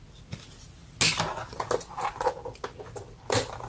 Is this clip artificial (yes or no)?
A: no